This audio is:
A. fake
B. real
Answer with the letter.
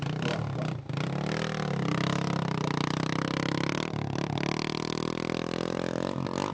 B